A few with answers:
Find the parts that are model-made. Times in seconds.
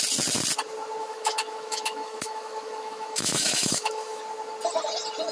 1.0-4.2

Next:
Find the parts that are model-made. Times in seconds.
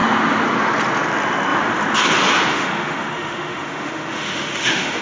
2.5-5.0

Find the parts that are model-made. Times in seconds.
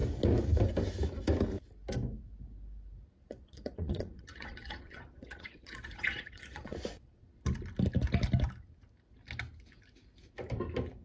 3.2-7.1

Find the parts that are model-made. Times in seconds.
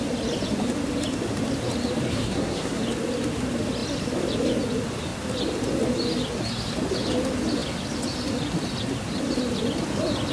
2.1-2.8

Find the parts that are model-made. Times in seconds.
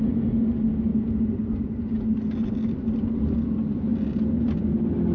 none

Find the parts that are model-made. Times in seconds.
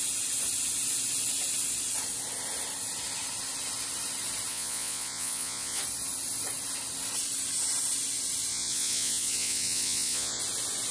4.5-5.8; 8.5-10.4